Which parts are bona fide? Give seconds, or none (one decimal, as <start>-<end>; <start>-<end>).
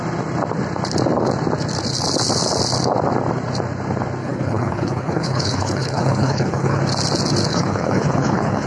0.0-4.2; 6.8-7.5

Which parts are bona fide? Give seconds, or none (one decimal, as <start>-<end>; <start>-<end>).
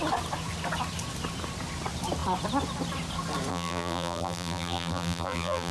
0.0-3.5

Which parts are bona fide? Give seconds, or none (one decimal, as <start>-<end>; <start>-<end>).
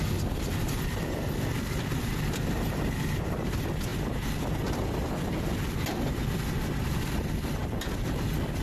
0.0-8.6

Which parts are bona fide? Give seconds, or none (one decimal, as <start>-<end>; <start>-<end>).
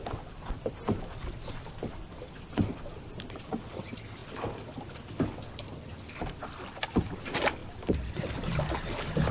0.0-9.3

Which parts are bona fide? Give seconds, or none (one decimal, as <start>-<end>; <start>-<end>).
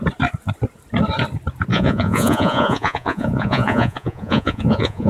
0.0-1.7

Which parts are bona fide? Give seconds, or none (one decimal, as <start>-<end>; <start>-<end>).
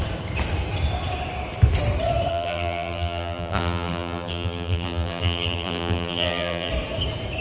0.0-2.3; 6.7-7.4